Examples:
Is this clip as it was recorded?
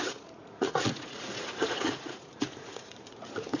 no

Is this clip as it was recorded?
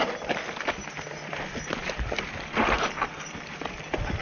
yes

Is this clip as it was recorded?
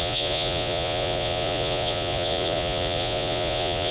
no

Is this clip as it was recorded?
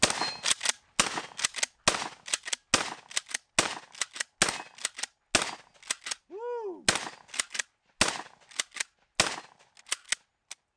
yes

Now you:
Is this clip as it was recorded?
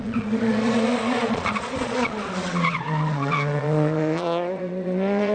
no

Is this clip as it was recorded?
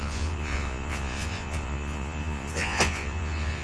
no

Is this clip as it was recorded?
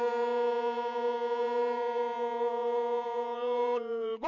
no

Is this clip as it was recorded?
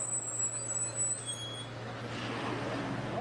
yes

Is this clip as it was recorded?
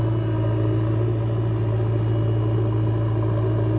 yes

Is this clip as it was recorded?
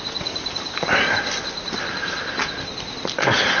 yes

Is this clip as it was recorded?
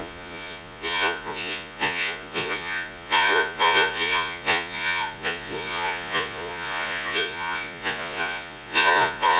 no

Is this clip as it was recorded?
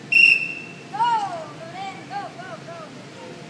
yes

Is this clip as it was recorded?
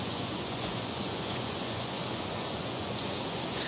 no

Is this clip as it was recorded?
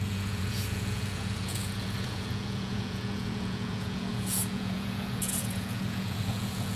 no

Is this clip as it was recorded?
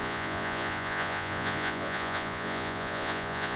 no